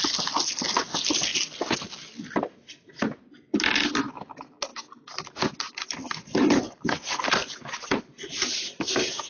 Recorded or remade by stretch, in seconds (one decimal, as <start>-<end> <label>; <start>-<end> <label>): 0.0-9.3 recorded